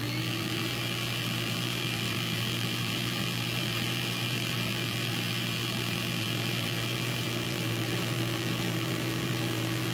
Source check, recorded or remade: remade